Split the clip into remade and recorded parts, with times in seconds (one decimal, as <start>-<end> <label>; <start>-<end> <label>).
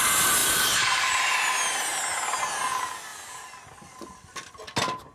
0.0-0.4 recorded; 0.4-1.5 remade; 1.5-3.1 recorded; 3.1-4.5 remade; 4.5-5.1 recorded